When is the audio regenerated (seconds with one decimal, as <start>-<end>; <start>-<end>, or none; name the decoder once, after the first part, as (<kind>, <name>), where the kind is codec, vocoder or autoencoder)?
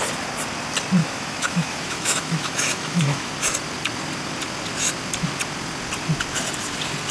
1.0-3.3 (autoencoder, DAC-VAE)